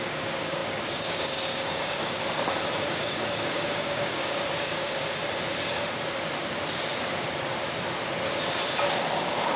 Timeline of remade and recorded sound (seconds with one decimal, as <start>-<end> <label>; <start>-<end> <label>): 0.0-2.2 remade; 2.2-2.9 recorded; 2.9-5.0 remade; 5.0-9.2 recorded; 9.2-9.6 remade